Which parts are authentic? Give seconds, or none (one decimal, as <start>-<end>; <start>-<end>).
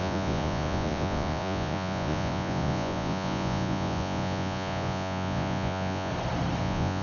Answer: 6.1-6.6